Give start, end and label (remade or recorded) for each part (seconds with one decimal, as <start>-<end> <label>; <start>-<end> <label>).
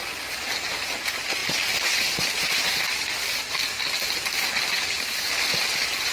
0.0-6.1 recorded